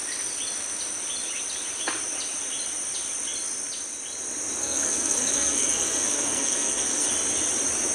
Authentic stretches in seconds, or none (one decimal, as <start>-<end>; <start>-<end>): 0.0-4.6; 7.1-7.9